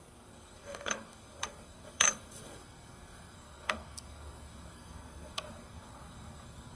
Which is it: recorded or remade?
remade